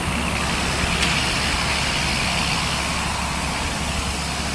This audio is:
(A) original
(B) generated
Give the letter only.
A